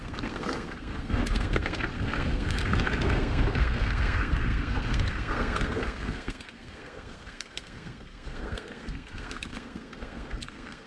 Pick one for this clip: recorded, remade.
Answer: remade